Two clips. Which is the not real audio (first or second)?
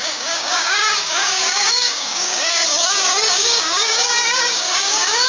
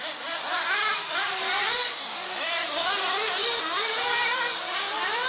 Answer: first